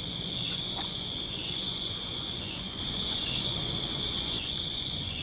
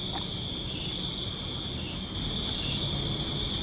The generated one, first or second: first